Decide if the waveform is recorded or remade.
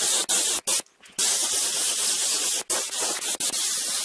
recorded